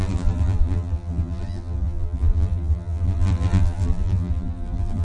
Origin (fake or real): fake